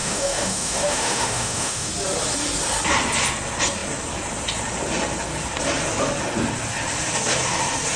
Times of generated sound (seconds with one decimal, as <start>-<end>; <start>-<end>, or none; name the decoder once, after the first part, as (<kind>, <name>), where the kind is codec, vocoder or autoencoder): 0.0-1.9 (autoencoder, DAC-VAE)